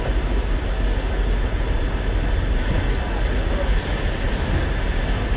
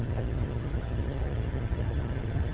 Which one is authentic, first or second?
first